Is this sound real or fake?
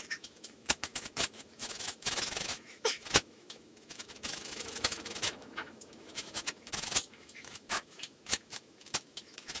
fake